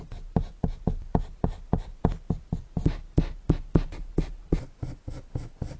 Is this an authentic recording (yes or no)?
yes